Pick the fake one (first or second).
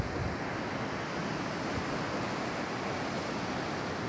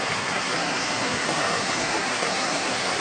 second